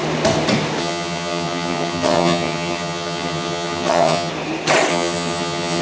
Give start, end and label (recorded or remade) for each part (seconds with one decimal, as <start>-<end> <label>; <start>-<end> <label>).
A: 0.0-0.8 recorded; 0.8-4.3 remade; 4.3-4.9 recorded; 4.9-5.8 remade